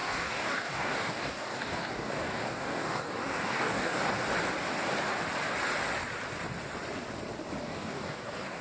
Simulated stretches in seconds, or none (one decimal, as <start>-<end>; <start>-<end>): 0.0-4.0; 7.6-8.6